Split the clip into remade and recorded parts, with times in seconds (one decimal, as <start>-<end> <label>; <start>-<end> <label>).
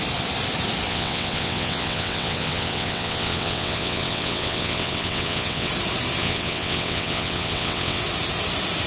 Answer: 0.0-0.9 recorded; 0.9-5.7 remade; 5.7-6.2 recorded; 6.2-8.0 remade; 8.0-8.9 recorded